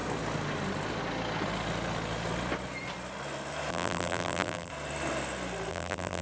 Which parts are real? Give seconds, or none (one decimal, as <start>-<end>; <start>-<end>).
0.0-3.7; 4.7-5.7